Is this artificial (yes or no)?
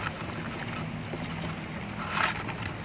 no